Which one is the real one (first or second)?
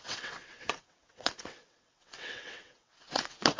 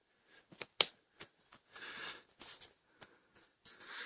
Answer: second